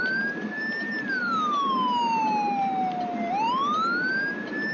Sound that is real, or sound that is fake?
real